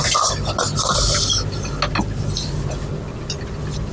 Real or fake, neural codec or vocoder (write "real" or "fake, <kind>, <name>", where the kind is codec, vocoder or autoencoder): real